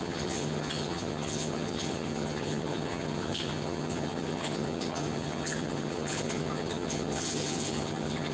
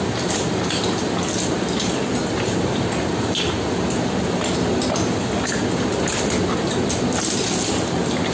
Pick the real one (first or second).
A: second